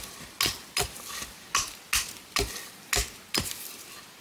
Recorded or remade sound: recorded